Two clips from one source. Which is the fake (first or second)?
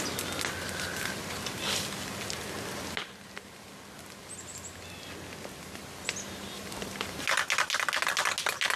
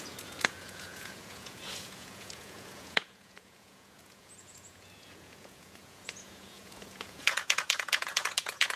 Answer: second